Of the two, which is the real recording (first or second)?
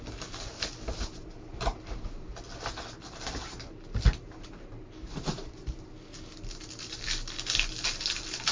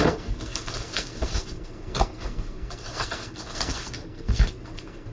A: first